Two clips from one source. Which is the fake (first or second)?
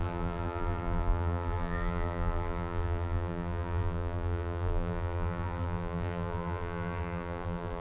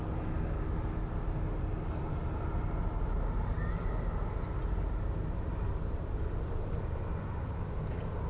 first